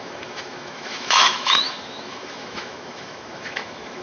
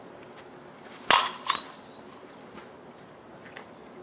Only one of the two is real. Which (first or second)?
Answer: second